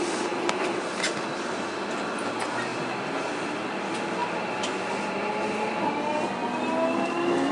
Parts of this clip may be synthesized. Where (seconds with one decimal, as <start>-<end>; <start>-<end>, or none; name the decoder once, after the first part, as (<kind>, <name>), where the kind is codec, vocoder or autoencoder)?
none

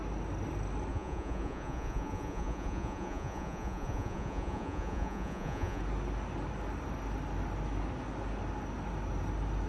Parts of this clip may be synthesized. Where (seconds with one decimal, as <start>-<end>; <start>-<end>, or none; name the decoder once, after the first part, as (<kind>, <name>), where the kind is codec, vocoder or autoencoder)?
0.9-5.8 (vocoder, Vocos)

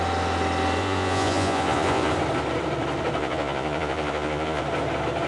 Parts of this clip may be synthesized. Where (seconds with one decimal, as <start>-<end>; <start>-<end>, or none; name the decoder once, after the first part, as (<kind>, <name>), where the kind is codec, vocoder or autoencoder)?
0.8-2.1 (vocoder, Vocos); 3.2-4.6

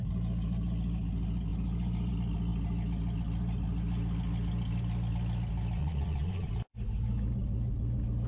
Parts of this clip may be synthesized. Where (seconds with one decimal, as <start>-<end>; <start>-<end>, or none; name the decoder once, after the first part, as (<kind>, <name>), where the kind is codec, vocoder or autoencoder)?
5.8-6.5 (vocoder, Vocos)

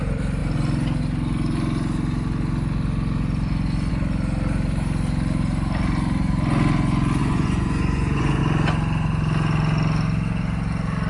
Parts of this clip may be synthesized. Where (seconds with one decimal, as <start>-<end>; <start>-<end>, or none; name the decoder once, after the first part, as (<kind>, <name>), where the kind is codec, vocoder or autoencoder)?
7.2-8.4 (vocoder, Vocos)